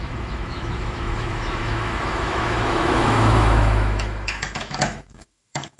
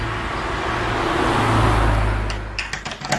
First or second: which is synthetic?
first